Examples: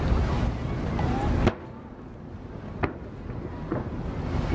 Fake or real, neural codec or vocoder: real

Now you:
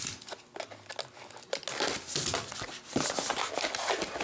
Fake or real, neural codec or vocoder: real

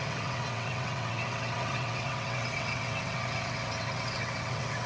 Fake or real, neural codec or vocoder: fake, vocoder, WaveNeXt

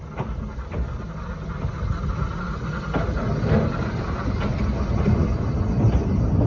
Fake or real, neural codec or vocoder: real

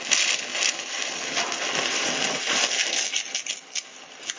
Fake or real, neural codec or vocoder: real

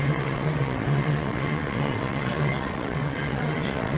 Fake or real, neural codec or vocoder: fake, vocoder, WaveNeXt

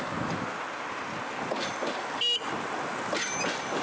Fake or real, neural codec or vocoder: real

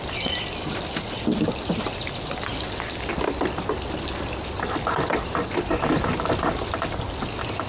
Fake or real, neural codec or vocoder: real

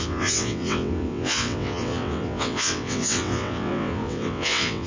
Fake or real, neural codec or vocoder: fake, vocoder, WaveNeXt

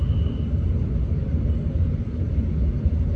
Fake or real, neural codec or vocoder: real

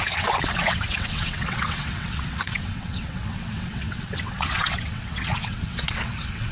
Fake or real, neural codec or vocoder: fake, vocoder, WaveNeXt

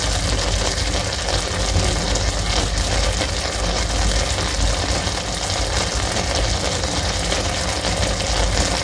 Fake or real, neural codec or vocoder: real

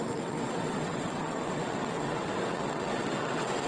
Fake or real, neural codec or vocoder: fake, vocoder, WaveNeXt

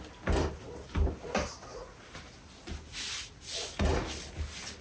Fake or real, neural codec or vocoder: real